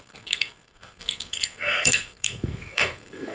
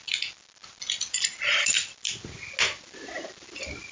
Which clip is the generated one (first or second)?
first